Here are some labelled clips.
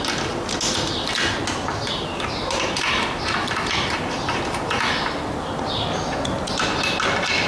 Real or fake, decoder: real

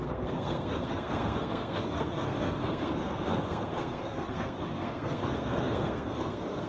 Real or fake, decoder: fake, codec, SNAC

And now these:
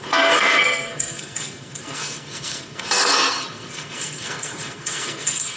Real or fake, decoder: fake, codec, SNAC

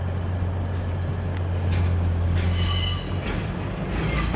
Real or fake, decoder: real